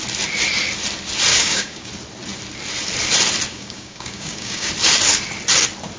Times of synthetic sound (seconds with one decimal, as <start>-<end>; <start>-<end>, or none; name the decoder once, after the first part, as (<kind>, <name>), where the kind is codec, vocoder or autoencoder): 1.3-1.9 (codec, DAC); 3.5-4.7